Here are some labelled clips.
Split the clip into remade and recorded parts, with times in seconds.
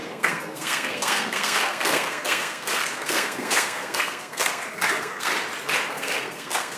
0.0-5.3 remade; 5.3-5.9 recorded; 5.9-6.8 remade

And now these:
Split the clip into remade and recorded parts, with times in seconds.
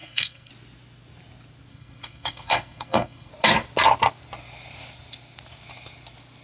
0.0-0.5 remade; 0.5-1.7 recorded; 1.7-3.3 remade; 3.3-6.4 recorded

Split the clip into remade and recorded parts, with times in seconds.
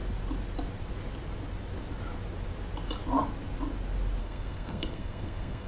0.0-4.2 recorded; 4.2-5.7 remade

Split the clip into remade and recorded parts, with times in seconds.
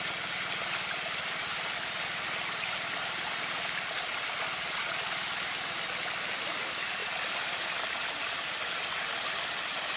0.0-10.0 recorded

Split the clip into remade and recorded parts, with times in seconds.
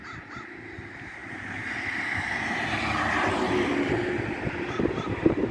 0.0-5.5 recorded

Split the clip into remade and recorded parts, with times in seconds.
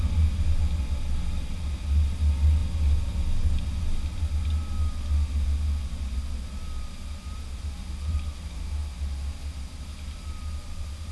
0.0-11.1 recorded